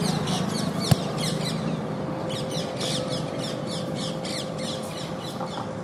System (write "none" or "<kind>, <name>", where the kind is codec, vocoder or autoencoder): none